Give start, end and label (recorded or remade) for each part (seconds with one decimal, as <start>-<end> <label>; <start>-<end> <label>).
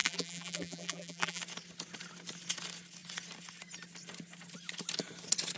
0.0-1.4 remade; 1.4-5.6 recorded